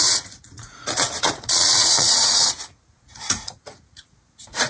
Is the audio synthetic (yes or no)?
yes